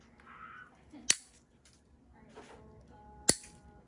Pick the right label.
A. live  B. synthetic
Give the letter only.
A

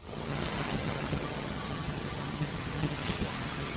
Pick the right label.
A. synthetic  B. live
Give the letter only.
A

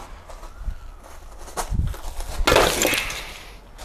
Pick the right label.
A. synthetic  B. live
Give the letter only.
B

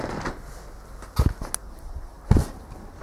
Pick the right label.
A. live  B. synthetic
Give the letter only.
A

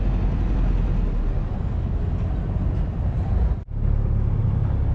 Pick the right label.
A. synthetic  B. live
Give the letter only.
B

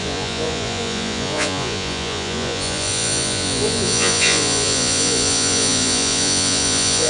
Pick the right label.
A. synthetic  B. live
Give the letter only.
A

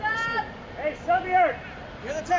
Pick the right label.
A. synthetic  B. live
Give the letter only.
B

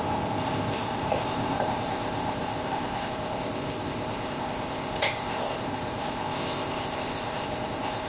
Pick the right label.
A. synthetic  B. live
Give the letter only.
A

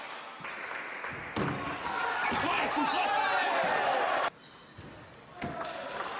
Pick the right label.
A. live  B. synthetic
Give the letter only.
A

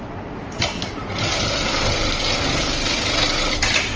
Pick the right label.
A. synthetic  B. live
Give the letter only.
B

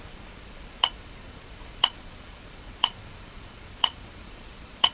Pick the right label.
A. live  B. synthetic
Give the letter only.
B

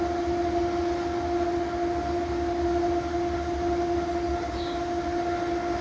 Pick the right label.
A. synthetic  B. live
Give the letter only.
B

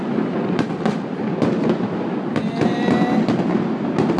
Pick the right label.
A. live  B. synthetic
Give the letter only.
A